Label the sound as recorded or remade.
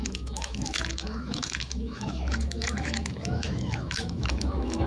remade